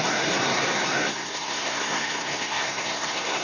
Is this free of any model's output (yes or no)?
no